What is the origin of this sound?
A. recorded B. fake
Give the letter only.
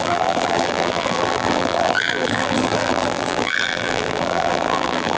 B